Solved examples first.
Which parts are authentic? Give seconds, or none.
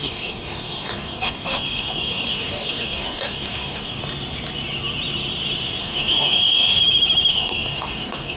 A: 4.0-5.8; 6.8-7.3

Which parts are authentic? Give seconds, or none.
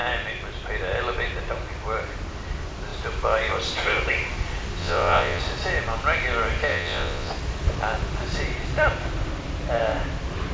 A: 0.0-4.8; 5.4-6.7; 7.3-10.5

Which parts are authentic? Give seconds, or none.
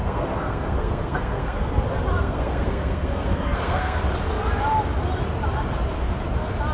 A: 1.7-2.1; 4.0-6.7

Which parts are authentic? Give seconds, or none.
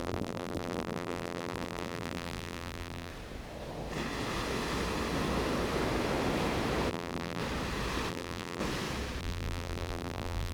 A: 3.1-6.9; 7.4-8.1; 8.6-9.2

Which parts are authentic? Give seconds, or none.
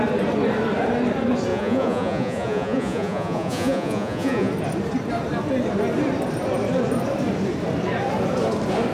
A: 0.0-1.5; 4.5-8.9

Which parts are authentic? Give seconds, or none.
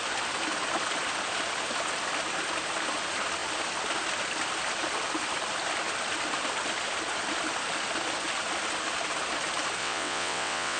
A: 0.0-9.8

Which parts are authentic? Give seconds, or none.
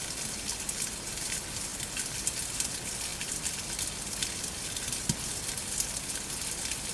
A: 0.0-6.9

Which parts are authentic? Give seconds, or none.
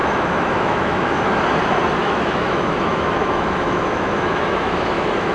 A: 1.4-2.0